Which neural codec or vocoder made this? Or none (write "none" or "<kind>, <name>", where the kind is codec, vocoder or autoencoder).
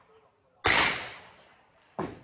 none